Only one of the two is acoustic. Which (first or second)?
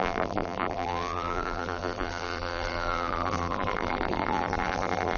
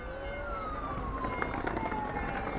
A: second